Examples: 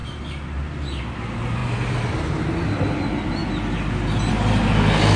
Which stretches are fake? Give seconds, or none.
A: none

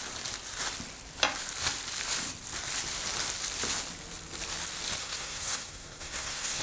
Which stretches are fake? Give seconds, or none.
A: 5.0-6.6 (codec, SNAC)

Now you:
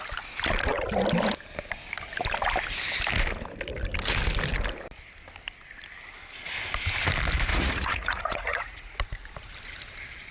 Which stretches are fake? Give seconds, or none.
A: 7.5-9.0 (vocoder, Vocos)

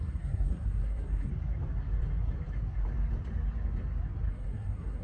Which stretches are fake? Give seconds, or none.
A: 0.0-1.3 (codec, SNAC); 4.3-5.0

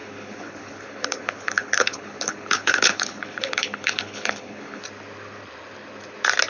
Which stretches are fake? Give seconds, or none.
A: 0.0-4.8 (codec, HILCodec)

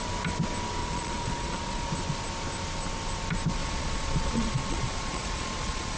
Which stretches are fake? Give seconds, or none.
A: 0.8-1.9 (vocoder, Vocos); 3.6-6.0

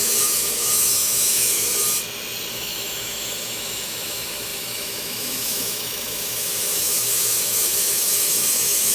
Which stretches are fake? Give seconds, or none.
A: 0.0-1.7 (autoencoder, DAC-VAE); 2.5-8.9